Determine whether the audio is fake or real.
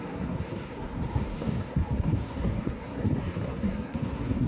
fake